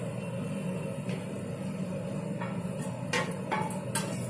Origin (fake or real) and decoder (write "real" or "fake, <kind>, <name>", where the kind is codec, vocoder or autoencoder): real